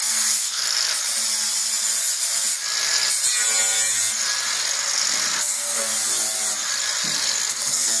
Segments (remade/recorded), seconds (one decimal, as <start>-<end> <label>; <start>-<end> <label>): 0.0-0.6 remade; 0.6-5.4 recorded; 5.4-5.9 remade; 5.9-7.5 recorded; 7.5-8.0 remade